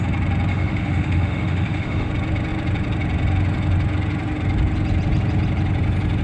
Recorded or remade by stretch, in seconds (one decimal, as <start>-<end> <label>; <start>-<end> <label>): 0.0-0.5 recorded; 0.5-2.1 remade; 2.1-6.2 recorded

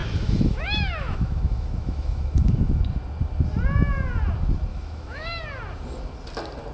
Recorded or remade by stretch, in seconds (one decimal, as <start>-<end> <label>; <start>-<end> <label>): 0.0-2.8 remade; 2.8-4.7 recorded; 4.7-5.4 remade; 5.4-6.7 recorded

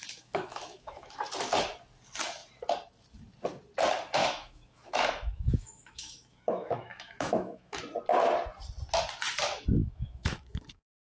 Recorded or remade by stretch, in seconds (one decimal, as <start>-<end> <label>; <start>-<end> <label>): 0.0-1.2 remade; 1.2-4.2 recorded; 4.2-7.8 remade; 7.8-9.8 recorded; 9.8-11.0 remade

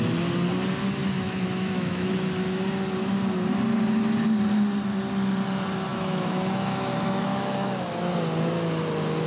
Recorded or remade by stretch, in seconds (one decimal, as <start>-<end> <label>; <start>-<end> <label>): 0.0-1.0 recorded; 1.0-2.1 remade; 2.1-5.9 recorded; 5.9-7.7 remade; 7.7-9.3 recorded

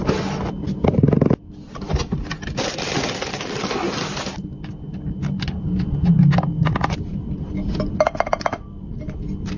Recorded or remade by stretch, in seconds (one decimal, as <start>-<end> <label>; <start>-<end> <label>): 0.0-9.6 recorded

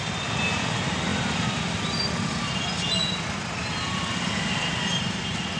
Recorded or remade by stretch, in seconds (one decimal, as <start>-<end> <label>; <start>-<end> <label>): 0.0-5.6 recorded